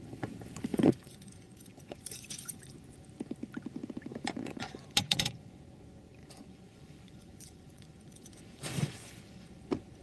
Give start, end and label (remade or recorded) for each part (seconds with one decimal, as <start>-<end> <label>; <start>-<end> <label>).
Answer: 0.0-0.7 recorded; 0.7-2.6 remade; 2.6-4.1 recorded; 4.1-5.6 remade; 5.6-6.2 recorded; 6.2-9.6 remade; 9.6-10.0 recorded